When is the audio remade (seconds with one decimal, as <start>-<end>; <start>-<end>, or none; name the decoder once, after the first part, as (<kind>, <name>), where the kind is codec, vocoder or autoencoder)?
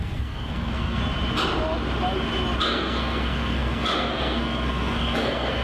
0.0-1.0 (codec, SNAC); 2.6-5.6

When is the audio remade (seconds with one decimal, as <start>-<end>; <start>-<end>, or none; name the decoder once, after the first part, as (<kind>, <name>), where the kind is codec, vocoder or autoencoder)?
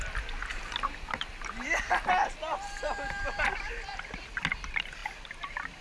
0.5-3.2 (vocoder, BigVGAN v2)